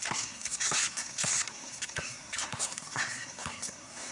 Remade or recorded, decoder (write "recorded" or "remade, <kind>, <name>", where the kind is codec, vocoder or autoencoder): remade, codec, SNAC